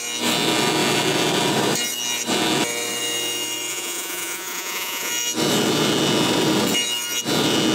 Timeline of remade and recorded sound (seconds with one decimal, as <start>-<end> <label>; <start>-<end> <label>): 0.0-3.7 recorded; 3.7-5.1 remade; 5.1-7.7 recorded